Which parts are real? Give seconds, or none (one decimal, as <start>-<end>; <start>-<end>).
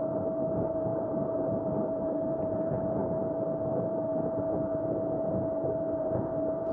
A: 0.0-0.9; 2.6-6.7